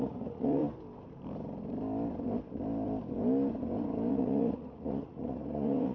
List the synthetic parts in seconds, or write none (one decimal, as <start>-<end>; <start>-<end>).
0.0-0.6; 4.1-5.9